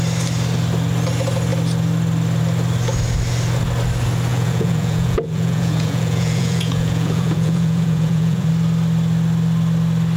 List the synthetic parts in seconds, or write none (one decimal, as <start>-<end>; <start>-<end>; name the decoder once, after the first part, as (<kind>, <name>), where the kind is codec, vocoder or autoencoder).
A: 4.3-8.5 (vocoder, Vocos)